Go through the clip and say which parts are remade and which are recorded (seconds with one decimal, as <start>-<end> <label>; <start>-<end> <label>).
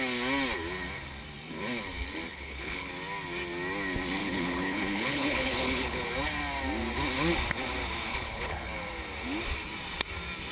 0.0-2.3 recorded; 2.3-2.9 remade; 2.9-4.2 recorded; 4.2-6.0 remade; 6.0-8.1 recorded; 8.1-8.7 remade; 8.7-10.5 recorded